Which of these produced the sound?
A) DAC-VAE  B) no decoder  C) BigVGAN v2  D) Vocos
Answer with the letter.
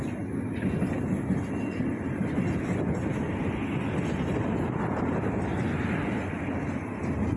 B